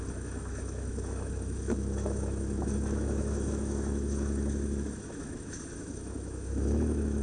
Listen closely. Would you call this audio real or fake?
fake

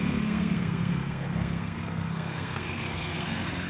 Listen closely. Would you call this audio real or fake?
fake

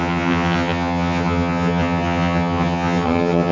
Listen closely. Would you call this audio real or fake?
fake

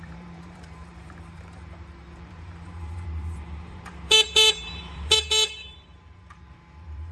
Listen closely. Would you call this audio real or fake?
fake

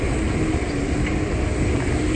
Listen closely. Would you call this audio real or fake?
real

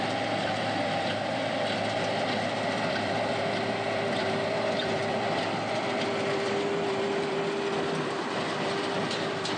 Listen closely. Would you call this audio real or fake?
fake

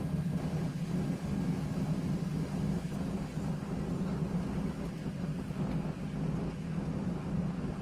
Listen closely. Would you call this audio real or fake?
real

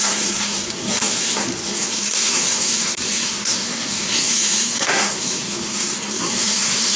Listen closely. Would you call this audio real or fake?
fake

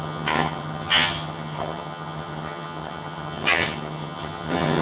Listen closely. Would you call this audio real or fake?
fake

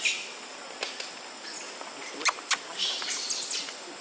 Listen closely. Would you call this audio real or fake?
real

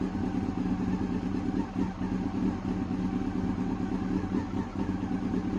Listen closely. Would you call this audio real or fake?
real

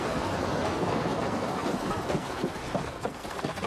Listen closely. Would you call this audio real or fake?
fake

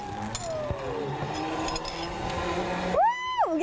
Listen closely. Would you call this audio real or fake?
real